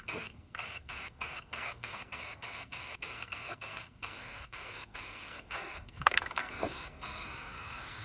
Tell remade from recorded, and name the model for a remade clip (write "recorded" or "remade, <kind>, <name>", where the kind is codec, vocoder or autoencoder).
remade, codec, SNAC